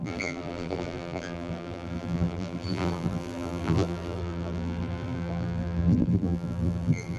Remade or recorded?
remade